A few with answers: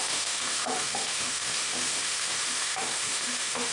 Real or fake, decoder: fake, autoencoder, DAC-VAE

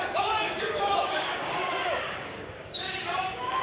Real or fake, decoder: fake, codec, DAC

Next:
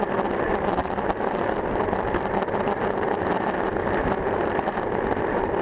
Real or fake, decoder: real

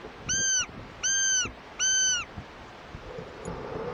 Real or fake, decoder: real